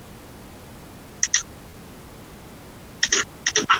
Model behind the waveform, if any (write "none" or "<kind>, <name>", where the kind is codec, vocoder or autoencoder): none